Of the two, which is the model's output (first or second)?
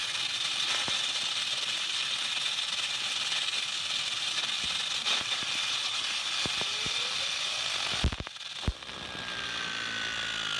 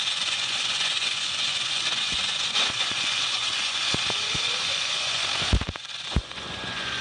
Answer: second